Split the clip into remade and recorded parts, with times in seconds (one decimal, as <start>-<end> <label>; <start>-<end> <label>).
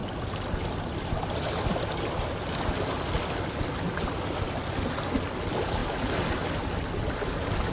0.0-3.3 remade; 3.3-7.7 recorded